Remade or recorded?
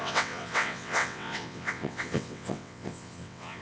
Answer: remade